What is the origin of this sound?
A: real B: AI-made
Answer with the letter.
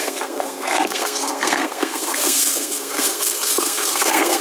B